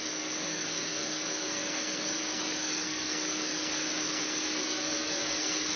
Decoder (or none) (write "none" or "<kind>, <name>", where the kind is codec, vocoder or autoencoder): codec, SNAC